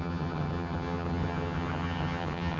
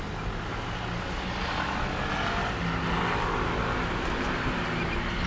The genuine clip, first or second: second